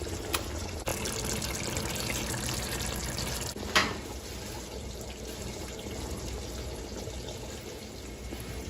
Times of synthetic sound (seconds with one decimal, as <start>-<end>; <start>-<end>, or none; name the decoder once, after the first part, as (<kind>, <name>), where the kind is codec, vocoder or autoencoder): none